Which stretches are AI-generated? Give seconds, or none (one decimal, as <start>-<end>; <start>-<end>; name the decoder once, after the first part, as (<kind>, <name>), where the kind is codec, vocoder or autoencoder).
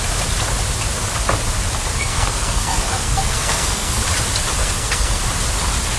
1.9-4.0 (codec, SNAC); 4.6-5.2